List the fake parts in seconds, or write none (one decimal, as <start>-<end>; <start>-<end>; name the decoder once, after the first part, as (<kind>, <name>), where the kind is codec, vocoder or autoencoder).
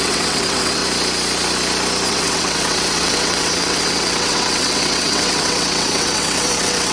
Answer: 0.0-0.8 (vocoder, WaveNeXt); 2.1-6.9